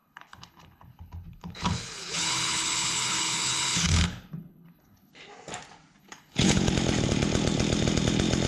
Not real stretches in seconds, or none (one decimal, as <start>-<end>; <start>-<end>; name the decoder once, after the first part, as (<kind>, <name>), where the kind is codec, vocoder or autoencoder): 0.0-5.1 (codec, HILCodec); 6.0-6.7